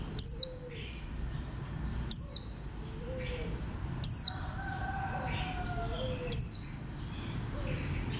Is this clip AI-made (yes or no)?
no